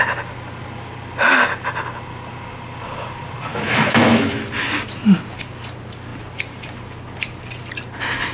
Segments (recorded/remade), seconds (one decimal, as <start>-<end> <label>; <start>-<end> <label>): 0.0-3.5 recorded; 3.5-4.4 remade; 4.4-8.3 recorded